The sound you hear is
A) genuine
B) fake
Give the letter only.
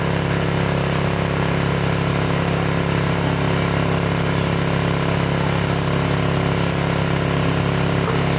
B